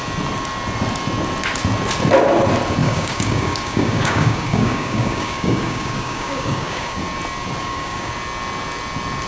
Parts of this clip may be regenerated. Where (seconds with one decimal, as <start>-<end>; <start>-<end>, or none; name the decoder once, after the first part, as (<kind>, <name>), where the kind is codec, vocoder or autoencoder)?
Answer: 2.8-7.0 (codec, DAC); 7.6-8.1